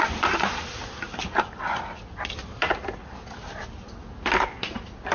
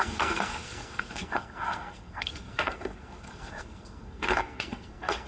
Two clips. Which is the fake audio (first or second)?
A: second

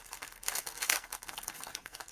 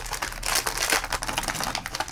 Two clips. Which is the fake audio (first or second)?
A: first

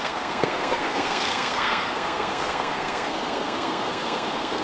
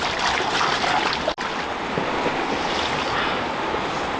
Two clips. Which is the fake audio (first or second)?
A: first